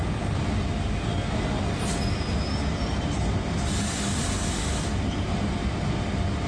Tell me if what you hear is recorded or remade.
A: recorded